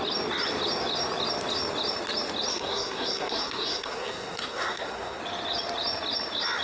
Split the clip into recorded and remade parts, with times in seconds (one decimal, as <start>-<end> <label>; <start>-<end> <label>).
0.0-2.5 recorded; 2.5-5.2 remade; 5.2-6.6 recorded